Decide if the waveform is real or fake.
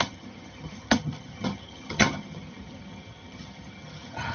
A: fake